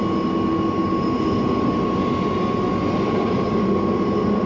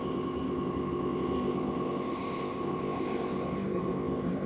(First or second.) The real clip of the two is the first